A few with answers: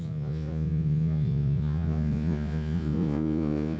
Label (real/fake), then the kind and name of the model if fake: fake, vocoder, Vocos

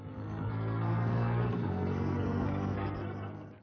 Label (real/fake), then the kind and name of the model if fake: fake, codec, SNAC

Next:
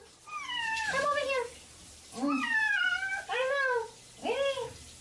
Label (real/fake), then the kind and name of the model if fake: real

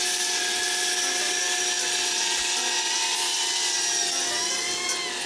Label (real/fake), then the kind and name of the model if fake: real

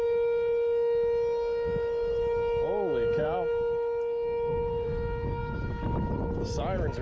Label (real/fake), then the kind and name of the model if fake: real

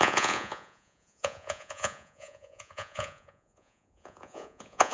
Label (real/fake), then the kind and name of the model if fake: fake, vocoder, Vocos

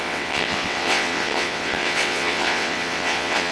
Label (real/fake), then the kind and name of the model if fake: fake, vocoder, WaveNeXt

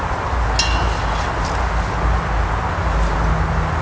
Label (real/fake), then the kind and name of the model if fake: real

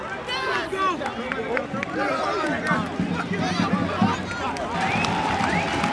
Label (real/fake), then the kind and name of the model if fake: real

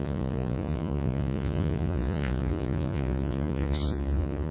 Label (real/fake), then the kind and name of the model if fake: fake, vocoder, Vocos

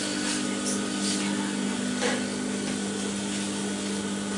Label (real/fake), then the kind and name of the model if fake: real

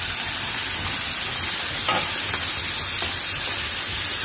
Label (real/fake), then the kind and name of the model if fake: real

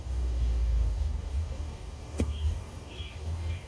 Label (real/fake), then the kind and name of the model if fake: fake, codec, DAC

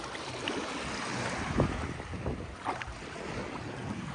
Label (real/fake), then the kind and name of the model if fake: real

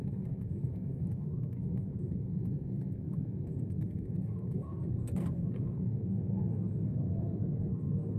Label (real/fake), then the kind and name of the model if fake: fake, codec, SNAC